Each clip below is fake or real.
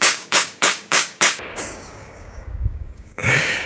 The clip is fake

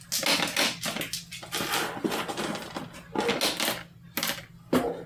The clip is real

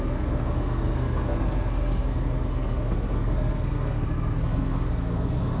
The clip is fake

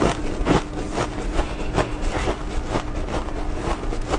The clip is real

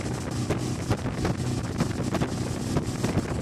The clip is real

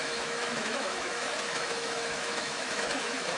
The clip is fake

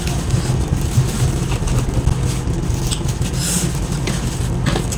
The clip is real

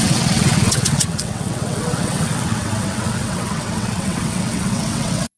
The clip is fake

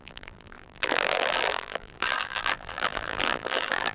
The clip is fake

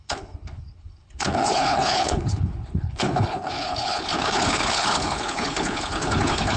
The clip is fake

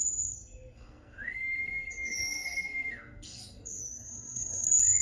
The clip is fake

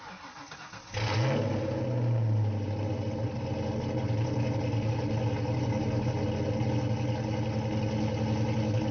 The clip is real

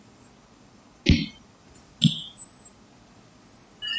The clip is real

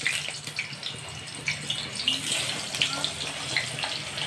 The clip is real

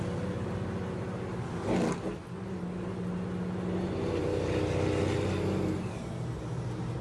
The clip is real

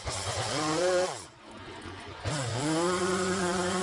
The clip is fake